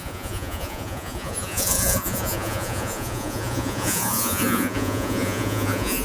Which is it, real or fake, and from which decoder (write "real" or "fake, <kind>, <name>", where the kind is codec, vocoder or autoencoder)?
fake, vocoder, Vocos